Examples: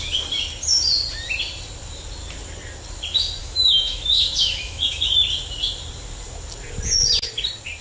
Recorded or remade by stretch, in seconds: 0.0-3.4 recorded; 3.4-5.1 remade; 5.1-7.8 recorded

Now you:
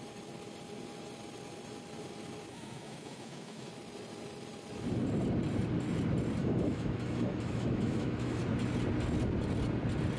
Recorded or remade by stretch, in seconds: 0.0-2.5 recorded; 2.5-3.7 remade; 3.7-6.4 recorded; 6.4-8.4 remade; 8.4-10.2 recorded

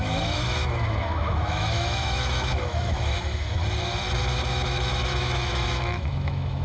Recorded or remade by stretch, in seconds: 0.0-3.6 remade; 3.6-4.2 recorded; 4.2-6.6 remade

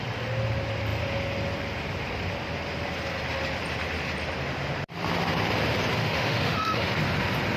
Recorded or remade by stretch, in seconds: 0.0-6.0 recorded; 6.0-6.9 remade; 6.9-7.6 recorded